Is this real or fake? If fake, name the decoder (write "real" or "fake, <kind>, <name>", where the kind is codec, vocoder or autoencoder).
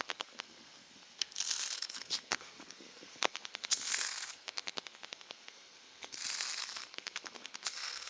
fake, codec, SNAC